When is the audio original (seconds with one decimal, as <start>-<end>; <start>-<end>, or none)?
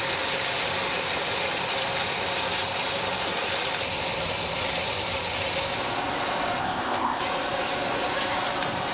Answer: 0.0-6.6; 7.2-8.9